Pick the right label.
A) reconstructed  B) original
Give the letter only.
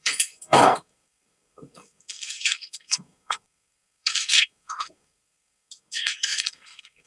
A